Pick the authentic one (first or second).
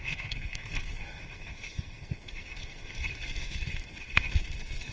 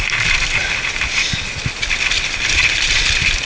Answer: second